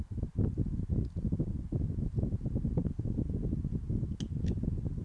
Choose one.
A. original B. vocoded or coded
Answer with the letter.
A